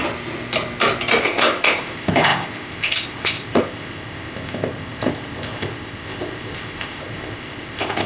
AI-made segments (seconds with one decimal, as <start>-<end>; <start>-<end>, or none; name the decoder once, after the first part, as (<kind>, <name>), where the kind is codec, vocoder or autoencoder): 1.2-8.1 (codec, ZipCodec)